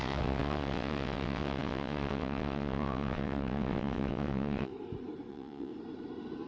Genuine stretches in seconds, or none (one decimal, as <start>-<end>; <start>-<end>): 4.7-5.3; 5.7-6.5